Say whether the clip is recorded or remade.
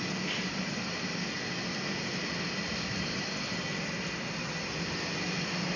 recorded